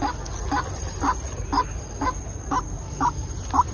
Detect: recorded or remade recorded